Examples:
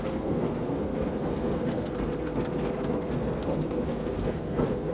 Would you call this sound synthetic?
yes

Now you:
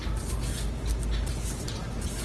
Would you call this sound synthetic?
no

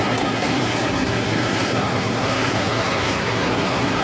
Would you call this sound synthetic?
yes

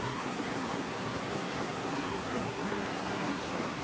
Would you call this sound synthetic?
yes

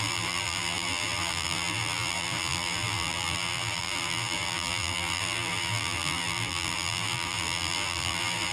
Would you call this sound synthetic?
yes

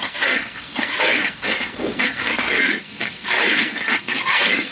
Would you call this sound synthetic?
yes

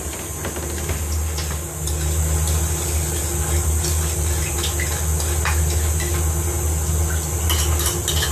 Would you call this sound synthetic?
no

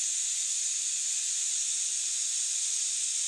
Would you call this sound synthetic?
no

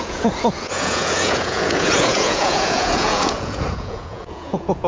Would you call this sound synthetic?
yes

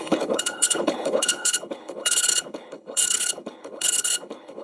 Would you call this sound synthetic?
yes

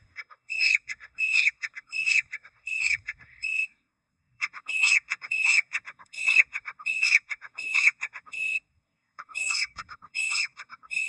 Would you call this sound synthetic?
yes